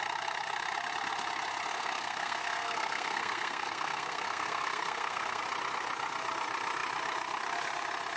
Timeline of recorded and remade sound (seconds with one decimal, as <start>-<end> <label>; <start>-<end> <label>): 0.0-1.7 recorded; 1.7-5.4 remade; 5.4-8.2 recorded

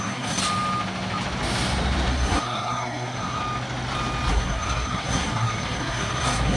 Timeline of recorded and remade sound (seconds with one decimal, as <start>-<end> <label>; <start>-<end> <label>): 0.0-0.4 remade; 0.4-2.1 recorded; 2.1-3.4 remade; 3.4-4.3 recorded; 4.3-6.6 remade

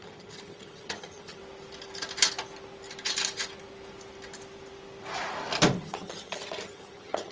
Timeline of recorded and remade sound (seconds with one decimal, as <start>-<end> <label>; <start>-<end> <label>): 0.0-1.4 remade; 1.4-5.8 recorded; 5.8-7.3 remade